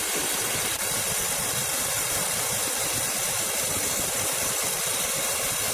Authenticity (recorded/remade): remade